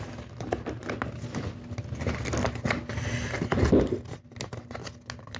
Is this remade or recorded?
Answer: recorded